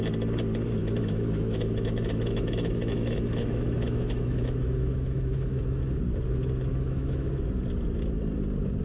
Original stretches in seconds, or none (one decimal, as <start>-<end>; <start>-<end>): 0.0-0.8; 5.6-6.7; 7.3-8.8